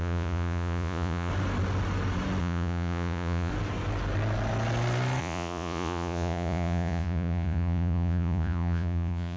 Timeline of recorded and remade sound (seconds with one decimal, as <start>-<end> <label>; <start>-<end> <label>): 0.0-1.3 remade; 1.3-2.4 recorded; 2.4-3.5 remade; 3.5-5.2 recorded; 5.2-9.4 remade